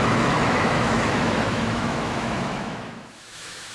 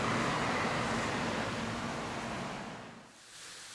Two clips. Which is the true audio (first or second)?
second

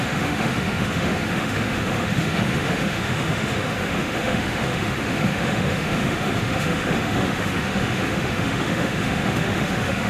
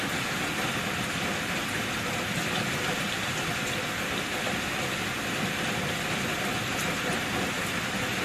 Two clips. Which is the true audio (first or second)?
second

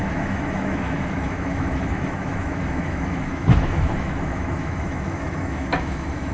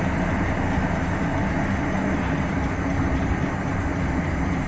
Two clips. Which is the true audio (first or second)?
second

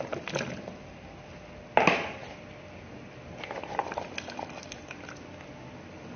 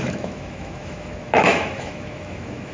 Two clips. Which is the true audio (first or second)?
first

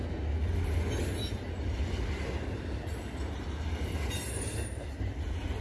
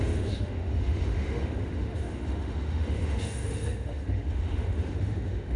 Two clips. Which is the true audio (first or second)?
first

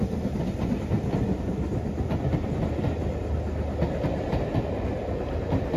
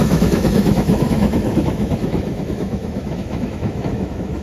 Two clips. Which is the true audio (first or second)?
first